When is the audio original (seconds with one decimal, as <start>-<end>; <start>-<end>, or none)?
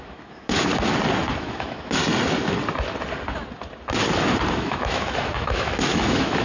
0.7-1.4; 2.0-4.5